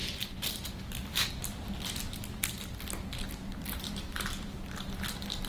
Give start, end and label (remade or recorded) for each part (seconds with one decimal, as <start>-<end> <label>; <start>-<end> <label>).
0.0-5.5 recorded